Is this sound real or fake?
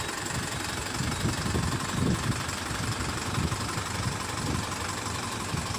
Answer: fake